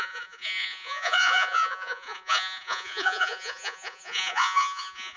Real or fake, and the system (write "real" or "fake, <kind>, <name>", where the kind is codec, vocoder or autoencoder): fake, vocoder, Vocos